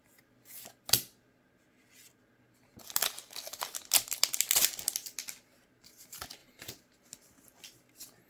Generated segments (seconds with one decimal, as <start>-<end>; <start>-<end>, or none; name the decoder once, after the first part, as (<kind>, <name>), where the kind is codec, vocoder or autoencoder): 0.0-0.7 (vocoder, BigVGAN v2); 6.4-7.6